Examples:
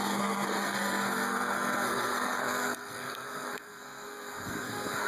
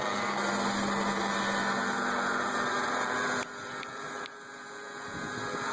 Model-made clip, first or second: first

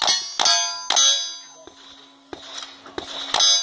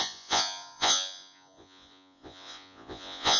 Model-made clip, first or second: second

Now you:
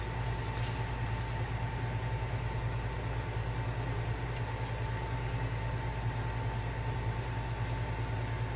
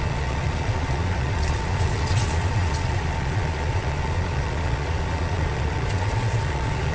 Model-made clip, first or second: second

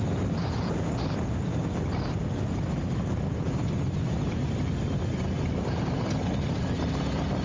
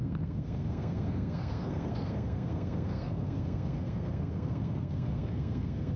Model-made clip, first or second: second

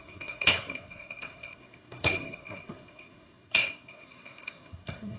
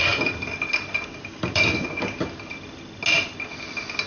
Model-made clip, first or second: first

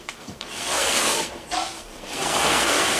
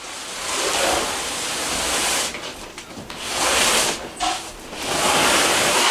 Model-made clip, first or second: first